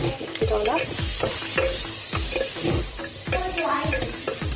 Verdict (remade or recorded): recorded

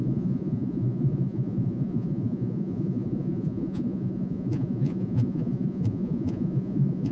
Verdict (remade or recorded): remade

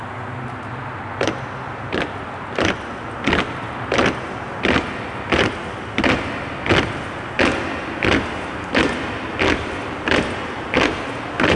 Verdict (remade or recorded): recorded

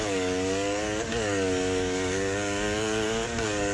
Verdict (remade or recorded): remade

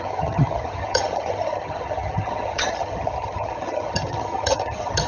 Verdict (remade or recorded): remade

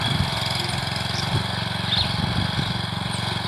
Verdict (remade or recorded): recorded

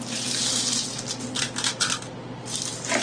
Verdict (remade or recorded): recorded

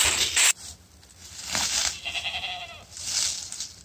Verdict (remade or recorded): recorded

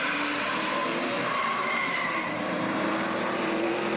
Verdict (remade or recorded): remade